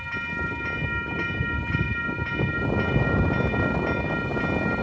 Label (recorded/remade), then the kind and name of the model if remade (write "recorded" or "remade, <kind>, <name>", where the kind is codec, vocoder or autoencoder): recorded